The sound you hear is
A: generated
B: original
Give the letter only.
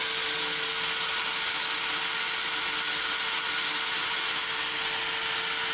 B